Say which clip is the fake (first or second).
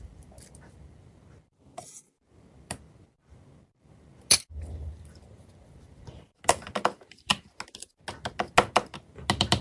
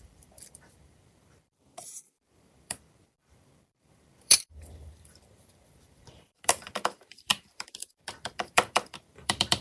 second